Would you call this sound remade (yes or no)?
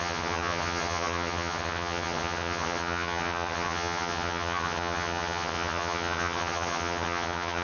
yes